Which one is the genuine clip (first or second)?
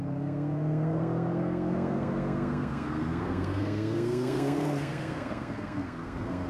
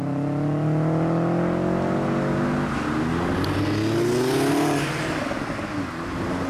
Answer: second